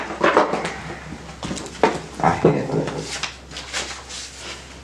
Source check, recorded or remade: recorded